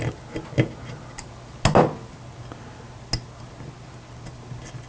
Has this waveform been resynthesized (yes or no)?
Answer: no